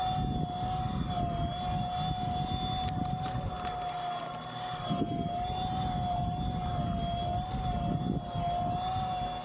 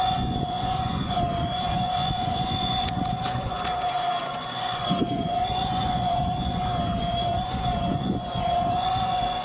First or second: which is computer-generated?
second